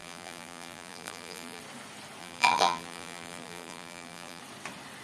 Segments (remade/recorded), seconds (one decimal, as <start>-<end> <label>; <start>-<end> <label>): 0.0-1.6 remade; 1.6-2.2 recorded; 2.2-4.4 remade; 4.4-5.0 recorded